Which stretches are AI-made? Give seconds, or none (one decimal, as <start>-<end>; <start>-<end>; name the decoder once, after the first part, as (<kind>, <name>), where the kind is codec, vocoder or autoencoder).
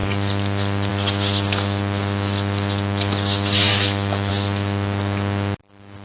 3.7-4.3 (autoencoder, DAC-VAE)